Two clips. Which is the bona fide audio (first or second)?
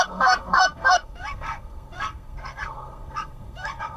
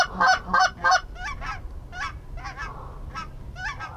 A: second